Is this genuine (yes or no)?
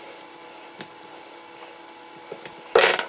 yes